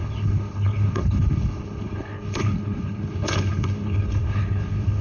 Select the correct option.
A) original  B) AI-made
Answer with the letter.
B